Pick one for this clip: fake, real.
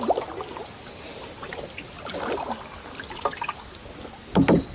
real